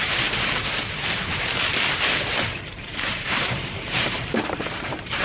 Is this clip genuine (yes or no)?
no